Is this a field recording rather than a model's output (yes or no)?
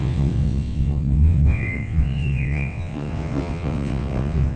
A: no